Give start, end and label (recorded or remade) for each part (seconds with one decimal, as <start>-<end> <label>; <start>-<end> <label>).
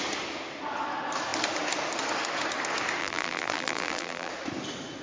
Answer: 0.0-3.0 recorded; 3.0-4.3 remade; 4.3-5.0 recorded